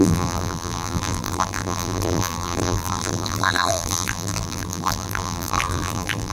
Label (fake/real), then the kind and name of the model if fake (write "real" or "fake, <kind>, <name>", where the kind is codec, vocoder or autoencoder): fake, vocoder, BigVGAN v2